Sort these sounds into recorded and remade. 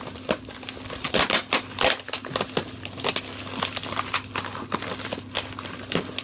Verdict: recorded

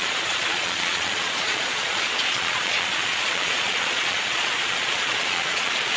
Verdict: remade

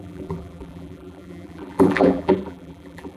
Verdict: remade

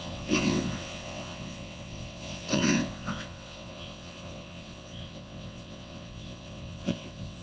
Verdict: remade